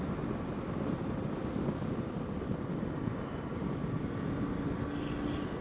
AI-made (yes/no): no